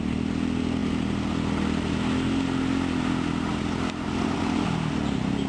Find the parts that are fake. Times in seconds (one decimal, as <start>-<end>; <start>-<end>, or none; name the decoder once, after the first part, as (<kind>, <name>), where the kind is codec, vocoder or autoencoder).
none